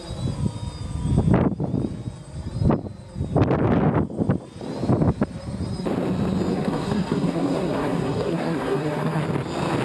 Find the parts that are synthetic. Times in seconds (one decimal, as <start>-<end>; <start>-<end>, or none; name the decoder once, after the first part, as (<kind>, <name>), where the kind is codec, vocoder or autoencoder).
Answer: 6.5-9.2 (codec, SNAC)